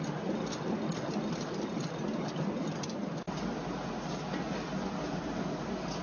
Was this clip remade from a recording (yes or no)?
no